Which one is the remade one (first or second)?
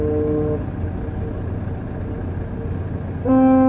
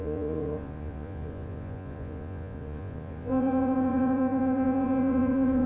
second